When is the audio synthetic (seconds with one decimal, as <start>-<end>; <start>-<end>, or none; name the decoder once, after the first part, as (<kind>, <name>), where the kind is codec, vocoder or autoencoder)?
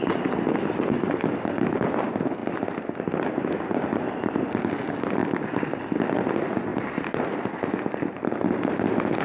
none